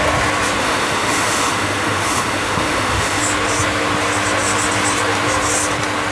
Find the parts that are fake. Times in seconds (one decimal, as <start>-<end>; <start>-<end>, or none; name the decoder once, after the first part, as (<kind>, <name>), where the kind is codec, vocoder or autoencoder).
0.6-3.2 (autoencoder, DAC-VAE)